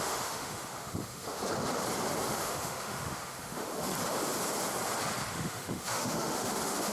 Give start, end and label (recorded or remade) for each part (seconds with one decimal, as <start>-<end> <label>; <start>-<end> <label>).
0.0-1.4 remade; 1.4-2.3 recorded; 2.3-3.9 remade; 3.9-5.3 recorded; 5.3-6.9 remade